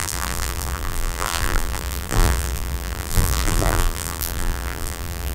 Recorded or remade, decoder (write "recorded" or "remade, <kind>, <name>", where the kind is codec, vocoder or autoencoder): remade, vocoder, BigVGAN v2